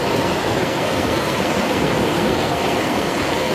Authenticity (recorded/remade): remade